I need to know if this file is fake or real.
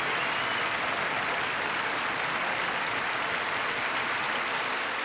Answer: real